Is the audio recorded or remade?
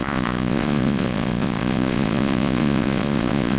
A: remade